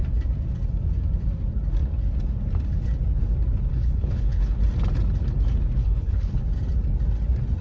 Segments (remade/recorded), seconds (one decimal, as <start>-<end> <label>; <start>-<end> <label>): 0.0-3.7 recorded; 3.7-4.6 remade; 4.6-5.8 recorded; 5.8-6.4 remade; 6.4-7.6 recorded